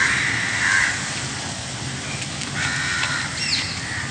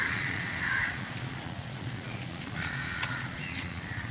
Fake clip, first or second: second